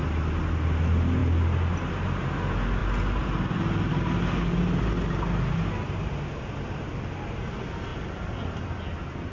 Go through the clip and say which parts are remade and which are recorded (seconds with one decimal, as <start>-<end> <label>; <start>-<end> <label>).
0.0-9.3 recorded